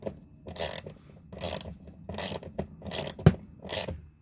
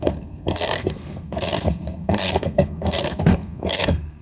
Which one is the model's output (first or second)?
second